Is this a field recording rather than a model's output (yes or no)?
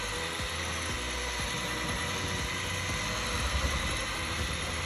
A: yes